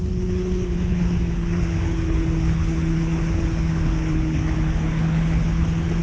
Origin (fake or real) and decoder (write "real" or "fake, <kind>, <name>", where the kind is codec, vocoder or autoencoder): fake, codec, HILCodec